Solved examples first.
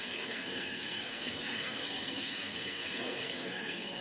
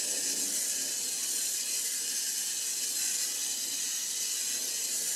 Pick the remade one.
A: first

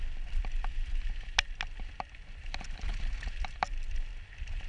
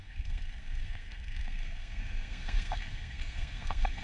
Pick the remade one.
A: second